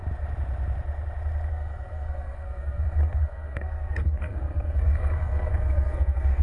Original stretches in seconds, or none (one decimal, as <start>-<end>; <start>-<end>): 0.0-1.5